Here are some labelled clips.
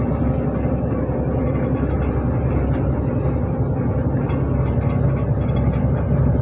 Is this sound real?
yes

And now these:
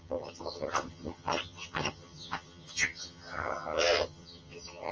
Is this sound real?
no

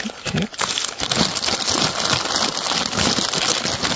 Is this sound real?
yes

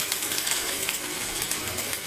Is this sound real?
no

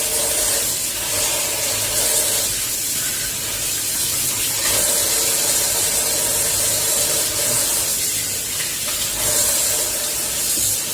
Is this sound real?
yes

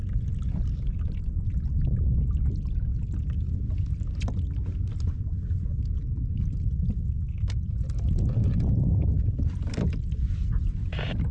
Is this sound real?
yes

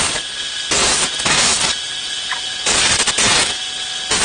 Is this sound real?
yes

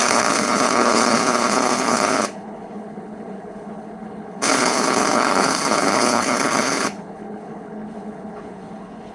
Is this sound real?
no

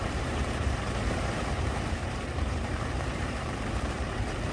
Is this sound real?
no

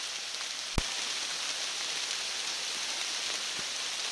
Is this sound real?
yes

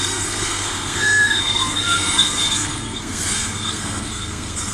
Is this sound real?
no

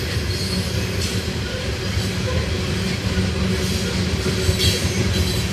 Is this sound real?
yes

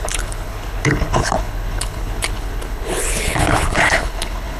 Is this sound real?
no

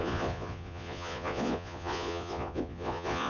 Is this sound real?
no